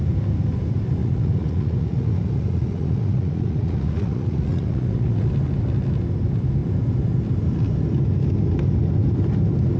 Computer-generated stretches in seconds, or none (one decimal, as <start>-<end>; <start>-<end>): 1.0-5.3